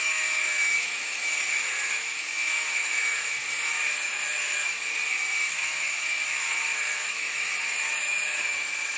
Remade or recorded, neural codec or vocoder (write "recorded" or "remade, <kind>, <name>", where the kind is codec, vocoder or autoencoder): remade, autoencoder, DAC-VAE